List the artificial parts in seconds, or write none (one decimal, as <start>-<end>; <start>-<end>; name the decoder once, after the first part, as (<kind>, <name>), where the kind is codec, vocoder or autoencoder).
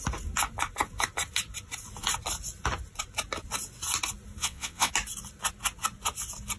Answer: 4.4-4.9 (vocoder, WaveNeXt)